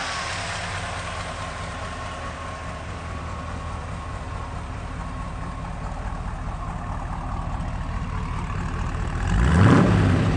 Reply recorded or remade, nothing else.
recorded